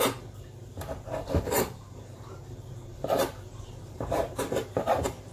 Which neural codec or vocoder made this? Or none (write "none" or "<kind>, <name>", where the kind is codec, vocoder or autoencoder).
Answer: vocoder, BigVGAN v2